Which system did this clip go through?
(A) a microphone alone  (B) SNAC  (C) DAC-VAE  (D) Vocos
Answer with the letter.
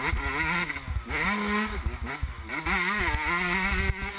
A